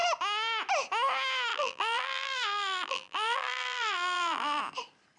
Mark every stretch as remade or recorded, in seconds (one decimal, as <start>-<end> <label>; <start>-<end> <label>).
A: 0.0-1.5 recorded; 1.5-4.6 remade; 4.6-5.2 recorded